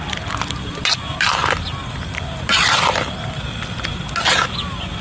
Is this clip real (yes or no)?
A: yes